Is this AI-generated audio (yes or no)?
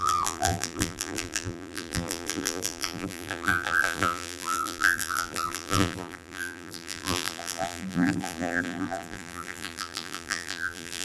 yes